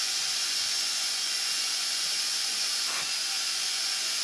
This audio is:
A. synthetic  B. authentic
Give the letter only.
A